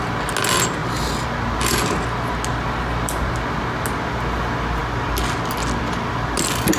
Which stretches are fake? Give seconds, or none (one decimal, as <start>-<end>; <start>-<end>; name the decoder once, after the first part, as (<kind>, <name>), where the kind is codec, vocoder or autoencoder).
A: none